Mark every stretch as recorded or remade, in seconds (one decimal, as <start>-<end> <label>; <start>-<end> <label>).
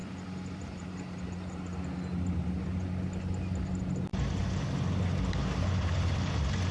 0.0-1.6 remade; 1.6-6.7 recorded